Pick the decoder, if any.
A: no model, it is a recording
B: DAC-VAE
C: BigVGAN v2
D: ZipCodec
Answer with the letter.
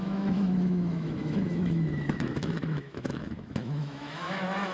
B